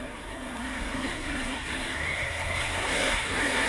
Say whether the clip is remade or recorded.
remade